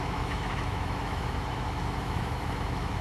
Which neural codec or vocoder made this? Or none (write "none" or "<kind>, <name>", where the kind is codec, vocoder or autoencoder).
autoencoder, DAC-VAE